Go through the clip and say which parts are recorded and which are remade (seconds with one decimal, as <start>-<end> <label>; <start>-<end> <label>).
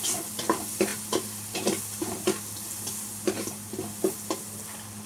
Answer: 0.0-5.1 recorded